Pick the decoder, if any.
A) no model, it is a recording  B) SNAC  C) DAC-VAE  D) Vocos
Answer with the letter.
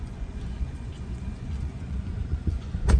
D